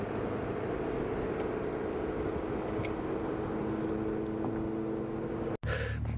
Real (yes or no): yes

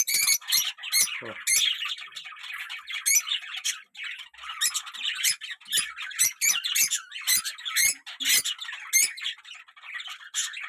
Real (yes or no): yes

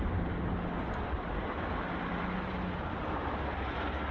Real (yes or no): yes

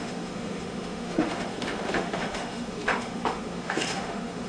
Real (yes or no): no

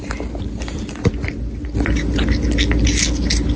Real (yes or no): yes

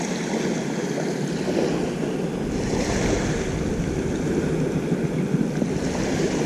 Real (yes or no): yes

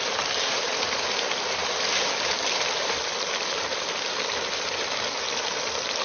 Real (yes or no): no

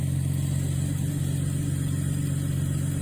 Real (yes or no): yes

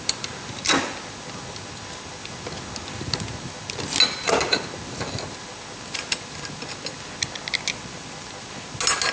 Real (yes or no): yes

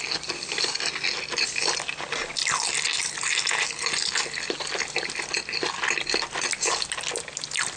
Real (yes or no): yes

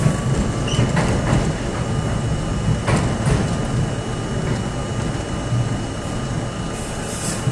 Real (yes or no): yes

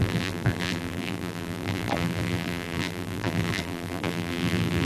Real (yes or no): no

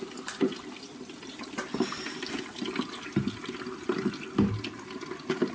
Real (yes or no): yes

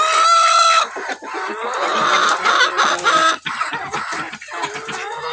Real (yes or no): yes